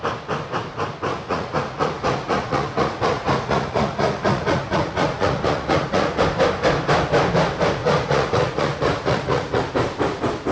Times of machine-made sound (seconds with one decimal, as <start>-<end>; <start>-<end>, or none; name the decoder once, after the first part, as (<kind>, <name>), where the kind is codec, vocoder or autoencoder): 1.1-6.2 (vocoder, Vocos); 7.8-9.6